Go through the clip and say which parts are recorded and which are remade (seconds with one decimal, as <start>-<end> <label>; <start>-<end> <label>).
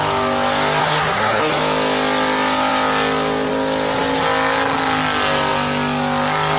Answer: 0.0-0.8 recorded; 0.8-1.6 remade; 1.6-6.6 recorded